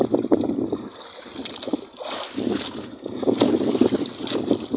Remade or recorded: recorded